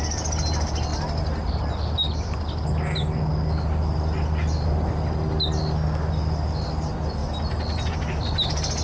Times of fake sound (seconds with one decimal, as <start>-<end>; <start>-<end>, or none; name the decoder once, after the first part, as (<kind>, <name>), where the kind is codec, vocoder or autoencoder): none